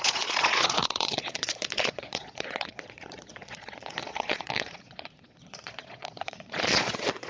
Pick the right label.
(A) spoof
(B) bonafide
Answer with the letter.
A